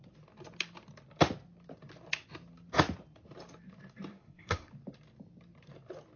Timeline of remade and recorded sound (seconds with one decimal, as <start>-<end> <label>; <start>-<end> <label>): 0.0-4.1 recorded; 4.1-4.7 remade; 4.7-6.2 recorded